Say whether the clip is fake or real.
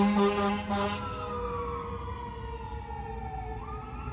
real